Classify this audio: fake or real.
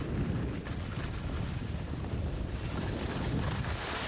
real